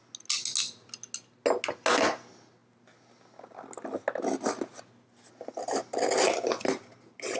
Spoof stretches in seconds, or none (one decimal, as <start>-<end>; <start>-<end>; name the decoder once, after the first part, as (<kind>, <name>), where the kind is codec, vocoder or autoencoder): none